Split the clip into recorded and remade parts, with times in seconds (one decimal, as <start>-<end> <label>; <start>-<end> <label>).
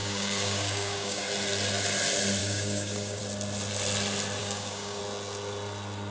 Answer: 0.0-1.3 remade; 1.3-2.4 recorded; 2.4-3.2 remade; 3.2-4.4 recorded; 4.4-5.0 remade; 5.0-6.1 recorded